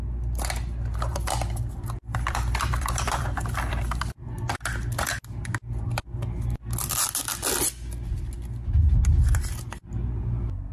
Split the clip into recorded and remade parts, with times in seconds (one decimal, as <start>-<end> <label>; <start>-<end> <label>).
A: 0.0-1.1 recorded; 1.1-4.0 remade; 4.0-10.7 recorded